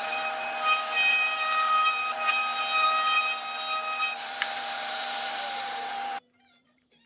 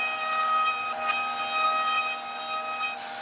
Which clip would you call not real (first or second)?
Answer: first